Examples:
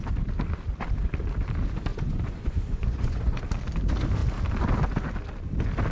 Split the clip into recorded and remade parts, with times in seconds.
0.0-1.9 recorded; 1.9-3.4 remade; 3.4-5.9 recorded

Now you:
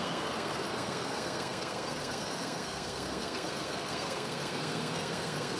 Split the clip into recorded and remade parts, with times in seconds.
0.0-5.6 remade

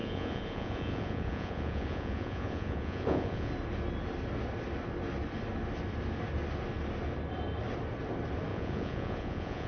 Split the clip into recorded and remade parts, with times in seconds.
0.0-3.5 remade; 3.5-8.5 recorded; 8.5-9.7 remade

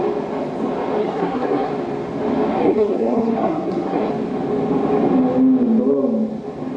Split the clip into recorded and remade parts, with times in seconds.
0.0-1.0 recorded; 1.0-1.7 remade; 1.7-2.6 recorded; 2.6-4.1 remade; 4.1-6.8 recorded

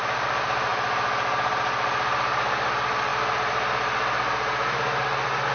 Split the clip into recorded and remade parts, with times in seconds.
0.0-5.5 recorded

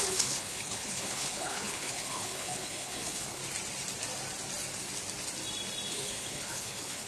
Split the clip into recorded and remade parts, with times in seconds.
0.0-3.4 remade; 3.4-5.9 recorded; 5.9-7.1 remade